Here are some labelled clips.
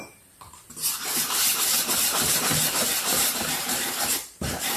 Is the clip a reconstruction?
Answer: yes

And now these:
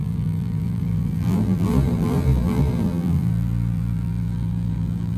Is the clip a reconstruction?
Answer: yes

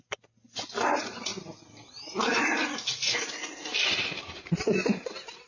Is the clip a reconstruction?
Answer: yes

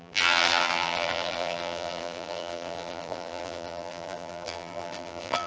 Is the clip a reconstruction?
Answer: yes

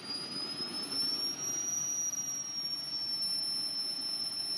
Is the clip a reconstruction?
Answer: no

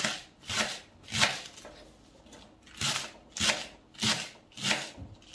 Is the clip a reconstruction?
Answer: no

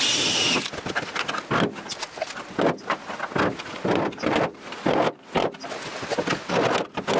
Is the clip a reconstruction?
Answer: no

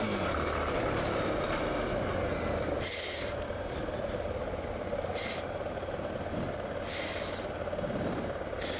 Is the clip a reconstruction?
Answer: no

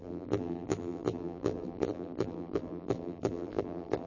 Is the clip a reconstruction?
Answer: yes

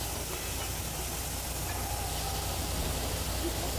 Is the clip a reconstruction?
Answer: no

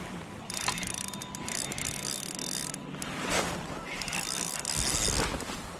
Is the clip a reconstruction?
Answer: no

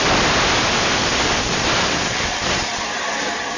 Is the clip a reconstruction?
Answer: yes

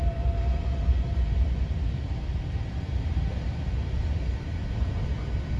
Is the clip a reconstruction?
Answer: yes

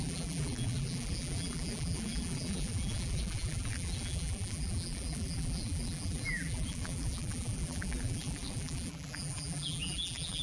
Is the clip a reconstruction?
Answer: yes